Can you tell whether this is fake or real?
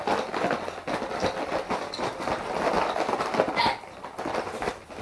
real